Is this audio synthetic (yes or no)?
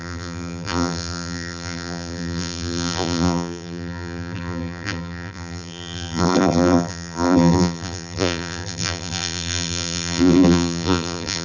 yes